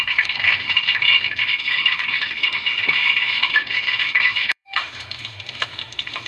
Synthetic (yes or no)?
yes